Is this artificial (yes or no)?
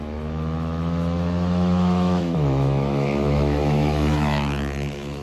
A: yes